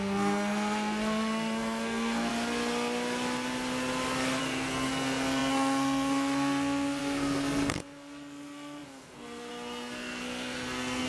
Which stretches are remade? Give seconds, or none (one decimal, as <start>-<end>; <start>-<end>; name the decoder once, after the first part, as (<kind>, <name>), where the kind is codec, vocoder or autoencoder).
0.0-2.3 (codec, SNAC); 4.4-11.1